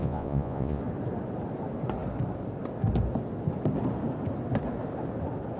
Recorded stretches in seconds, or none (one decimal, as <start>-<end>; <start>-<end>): 0.8-5.6